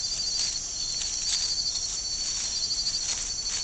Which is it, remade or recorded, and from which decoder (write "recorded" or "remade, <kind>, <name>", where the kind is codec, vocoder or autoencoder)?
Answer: recorded